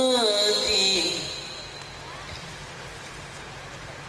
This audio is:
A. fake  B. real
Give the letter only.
B